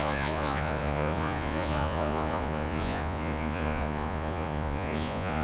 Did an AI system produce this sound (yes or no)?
yes